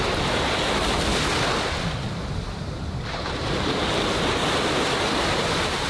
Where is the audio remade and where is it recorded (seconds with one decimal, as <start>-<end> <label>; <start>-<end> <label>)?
0.0-1.1 remade; 1.1-3.2 recorded; 3.2-4.4 remade; 4.4-5.2 recorded; 5.2-5.9 remade